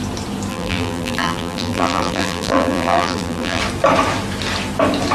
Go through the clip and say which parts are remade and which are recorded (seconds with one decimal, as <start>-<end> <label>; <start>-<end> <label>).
0.0-0.5 recorded; 0.5-3.6 remade; 3.6-5.1 recorded